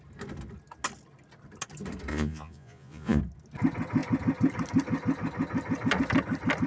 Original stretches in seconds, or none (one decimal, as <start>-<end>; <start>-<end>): 0.0-2.1; 3.2-6.7